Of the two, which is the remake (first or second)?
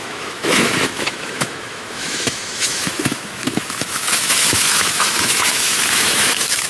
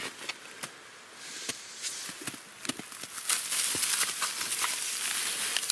first